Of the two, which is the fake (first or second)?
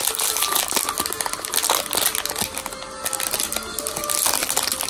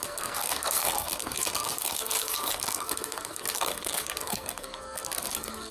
second